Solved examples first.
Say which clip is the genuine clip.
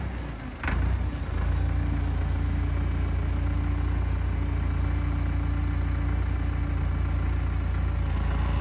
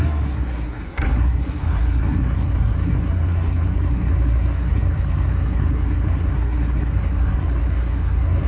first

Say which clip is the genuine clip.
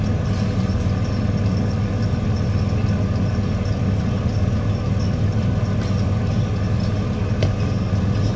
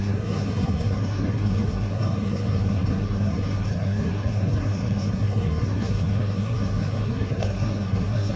first